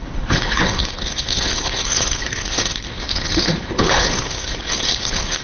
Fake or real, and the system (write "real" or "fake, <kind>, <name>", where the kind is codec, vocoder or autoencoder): fake, codec, HILCodec